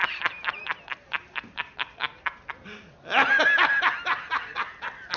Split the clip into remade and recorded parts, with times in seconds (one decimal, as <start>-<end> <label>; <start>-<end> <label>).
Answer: 0.0-2.4 remade; 2.4-5.2 recorded